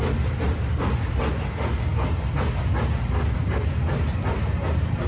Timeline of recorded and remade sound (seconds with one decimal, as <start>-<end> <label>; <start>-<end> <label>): 0.0-5.1 recorded